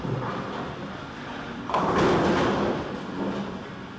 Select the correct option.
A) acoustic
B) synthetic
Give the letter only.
A